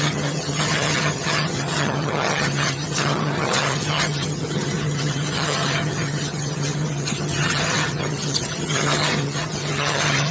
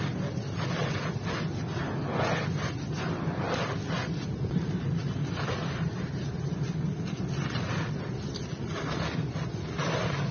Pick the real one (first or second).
second